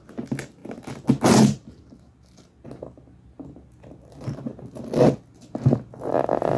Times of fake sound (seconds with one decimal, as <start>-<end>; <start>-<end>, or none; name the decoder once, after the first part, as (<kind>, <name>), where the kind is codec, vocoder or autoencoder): none